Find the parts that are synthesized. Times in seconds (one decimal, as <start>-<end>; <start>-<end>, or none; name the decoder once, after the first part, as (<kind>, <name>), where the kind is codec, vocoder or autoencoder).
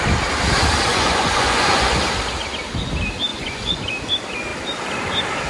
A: 0.9-2.0 (vocoder, Vocos); 3.3-3.8